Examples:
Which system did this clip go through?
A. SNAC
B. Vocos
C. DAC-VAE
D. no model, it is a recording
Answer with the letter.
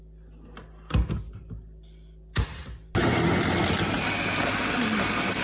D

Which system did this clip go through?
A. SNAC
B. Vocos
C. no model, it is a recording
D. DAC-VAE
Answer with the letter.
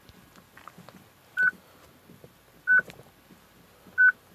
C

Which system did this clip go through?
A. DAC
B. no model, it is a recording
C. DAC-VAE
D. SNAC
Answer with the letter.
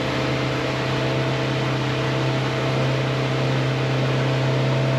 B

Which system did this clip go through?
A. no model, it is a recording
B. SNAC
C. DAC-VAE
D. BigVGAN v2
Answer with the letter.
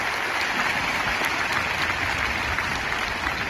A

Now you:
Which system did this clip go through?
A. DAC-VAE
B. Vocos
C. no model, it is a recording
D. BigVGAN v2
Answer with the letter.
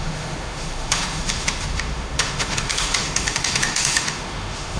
A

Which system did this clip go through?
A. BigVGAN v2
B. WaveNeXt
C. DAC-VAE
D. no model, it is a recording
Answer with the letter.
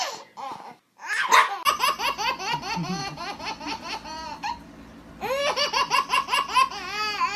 D